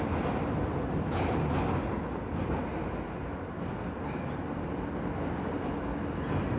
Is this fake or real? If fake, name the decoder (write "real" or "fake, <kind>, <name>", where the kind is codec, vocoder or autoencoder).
real